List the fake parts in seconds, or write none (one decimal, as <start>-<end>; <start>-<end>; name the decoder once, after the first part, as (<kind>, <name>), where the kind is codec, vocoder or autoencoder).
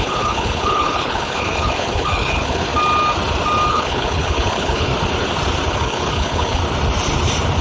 0.0-2.7 (codec, HILCodec); 3.7-4.9; 5.7-6.6